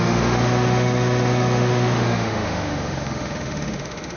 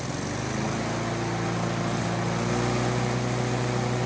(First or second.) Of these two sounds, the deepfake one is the first